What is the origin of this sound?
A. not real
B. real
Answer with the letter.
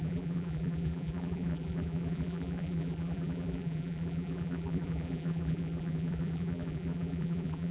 A